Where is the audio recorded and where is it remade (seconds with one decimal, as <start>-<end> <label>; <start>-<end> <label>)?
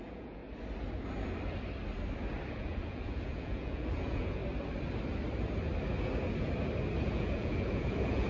0.0-0.4 remade; 0.4-2.5 recorded; 2.5-4.4 remade; 4.4-7.0 recorded; 7.0-8.3 remade